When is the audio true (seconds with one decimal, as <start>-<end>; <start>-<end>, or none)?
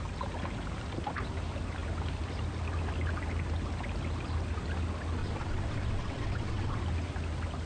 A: 0.0-5.2; 6.8-7.7